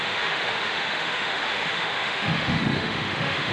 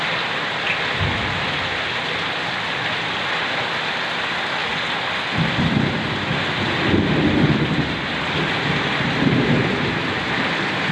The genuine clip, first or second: second